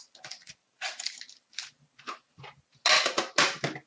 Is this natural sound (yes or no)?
yes